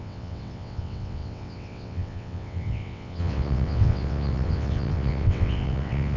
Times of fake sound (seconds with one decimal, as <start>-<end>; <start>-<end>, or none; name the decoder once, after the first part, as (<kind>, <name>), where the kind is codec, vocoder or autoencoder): 0.0-6.2 (vocoder, WaveNeXt)